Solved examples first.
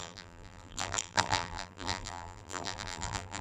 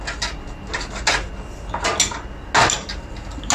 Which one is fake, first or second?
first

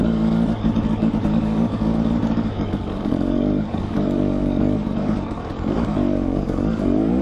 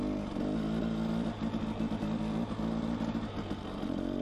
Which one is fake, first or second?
first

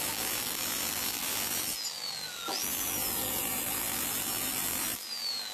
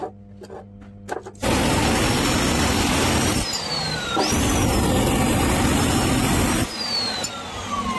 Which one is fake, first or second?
first